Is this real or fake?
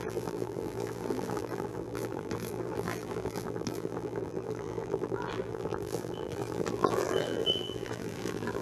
fake